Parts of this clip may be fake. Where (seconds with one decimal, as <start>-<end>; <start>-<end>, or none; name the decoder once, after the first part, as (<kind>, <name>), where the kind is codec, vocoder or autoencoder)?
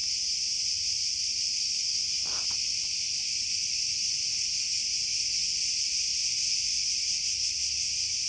6.1-7.0 (vocoder, BigVGAN v2)